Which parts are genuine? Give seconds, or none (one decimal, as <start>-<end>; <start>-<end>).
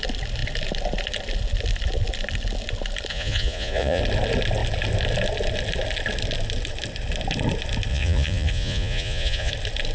0.0-3.1; 4.0-7.9; 9.5-9.9